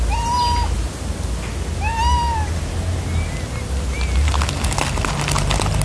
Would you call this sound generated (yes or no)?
no